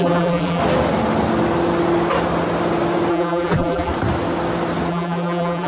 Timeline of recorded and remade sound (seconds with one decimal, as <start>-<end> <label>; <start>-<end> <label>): 0.0-0.6 remade; 0.6-3.1 recorded; 3.1-3.9 remade; 3.9-4.9 recorded; 4.9-5.7 remade